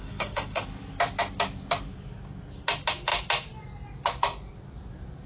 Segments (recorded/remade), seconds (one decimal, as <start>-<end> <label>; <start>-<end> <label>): 0.0-0.6 remade; 0.6-5.3 recorded